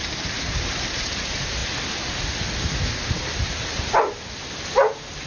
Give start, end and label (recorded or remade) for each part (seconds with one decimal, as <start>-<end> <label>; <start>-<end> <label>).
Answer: 0.0-5.3 recorded